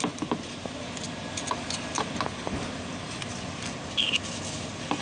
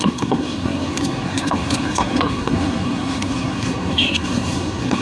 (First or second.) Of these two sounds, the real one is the first